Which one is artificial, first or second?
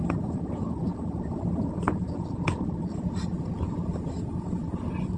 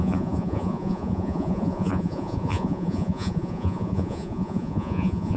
second